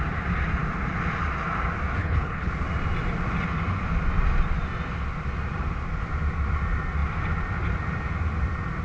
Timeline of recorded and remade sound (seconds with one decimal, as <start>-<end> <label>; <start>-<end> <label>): 0.0-2.0 recorded; 2.0-2.5 remade; 2.5-8.8 recorded